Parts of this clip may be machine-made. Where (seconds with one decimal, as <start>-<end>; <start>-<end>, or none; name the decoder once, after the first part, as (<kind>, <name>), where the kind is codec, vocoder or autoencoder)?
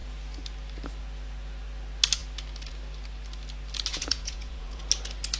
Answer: 3.9-4.8 (vocoder, Vocos)